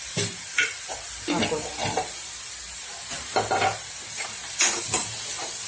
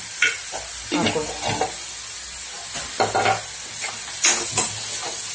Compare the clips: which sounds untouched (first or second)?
second